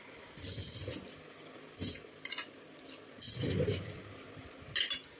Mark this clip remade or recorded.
recorded